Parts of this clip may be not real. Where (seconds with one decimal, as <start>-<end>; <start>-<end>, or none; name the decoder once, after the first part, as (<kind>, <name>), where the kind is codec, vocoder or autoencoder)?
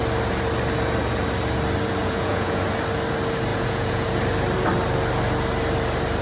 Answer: 2.0-2.6 (vocoder, Vocos); 3.5-4.2